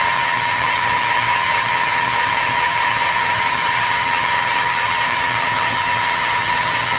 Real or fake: fake